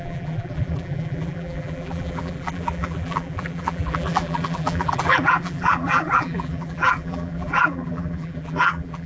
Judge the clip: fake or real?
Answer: fake